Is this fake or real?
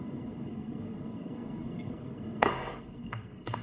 fake